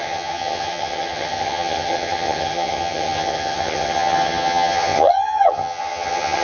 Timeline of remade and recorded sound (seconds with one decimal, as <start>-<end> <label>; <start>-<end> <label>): 0.0-6.4 remade